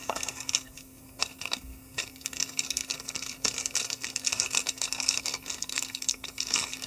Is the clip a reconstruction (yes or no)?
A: yes